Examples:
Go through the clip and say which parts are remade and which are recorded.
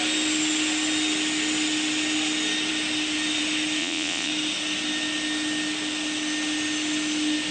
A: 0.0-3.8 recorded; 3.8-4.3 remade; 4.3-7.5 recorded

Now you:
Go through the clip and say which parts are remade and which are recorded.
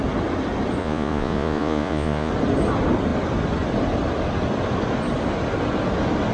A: 0.0-0.8 recorded; 0.8-2.3 remade; 2.3-6.3 recorded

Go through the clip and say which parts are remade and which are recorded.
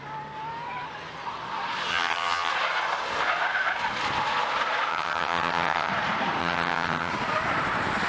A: 0.0-1.9 recorded; 1.9-2.5 remade; 2.5-4.9 recorded; 4.9-5.9 remade; 5.9-6.4 recorded; 6.4-7.1 remade; 7.1-8.1 recorded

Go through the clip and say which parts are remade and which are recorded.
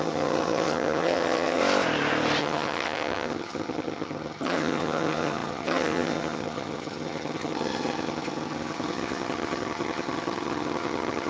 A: 0.0-1.6 remade; 1.6-2.4 recorded; 2.4-11.3 remade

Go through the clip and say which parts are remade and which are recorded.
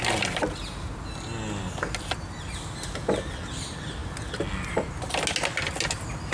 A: 0.0-6.3 recorded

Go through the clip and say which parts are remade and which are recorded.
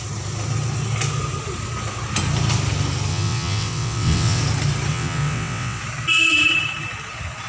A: 0.0-3.1 recorded; 3.1-4.4 remade; 4.4-4.9 recorded; 4.9-5.8 remade; 5.8-7.5 recorded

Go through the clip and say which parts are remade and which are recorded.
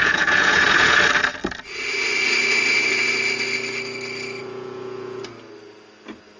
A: 0.0-1.0 remade; 1.0-4.4 recorded; 4.4-5.2 remade; 5.2-6.4 recorded